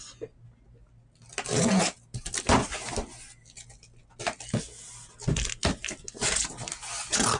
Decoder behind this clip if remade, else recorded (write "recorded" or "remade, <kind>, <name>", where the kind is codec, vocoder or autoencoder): recorded